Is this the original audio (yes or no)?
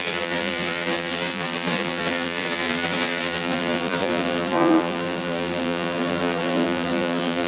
no